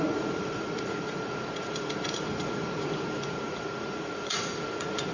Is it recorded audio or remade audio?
remade